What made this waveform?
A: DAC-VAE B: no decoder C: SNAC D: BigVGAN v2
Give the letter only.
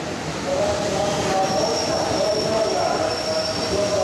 B